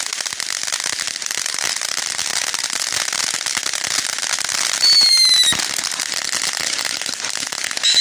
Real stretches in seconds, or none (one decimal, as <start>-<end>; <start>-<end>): 0.0-8.0